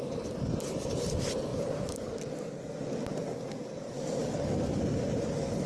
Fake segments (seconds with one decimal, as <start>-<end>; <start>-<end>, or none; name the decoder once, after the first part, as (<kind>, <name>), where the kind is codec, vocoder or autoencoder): none